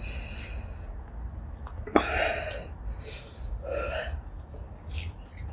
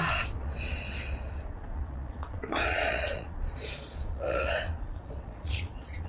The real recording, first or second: first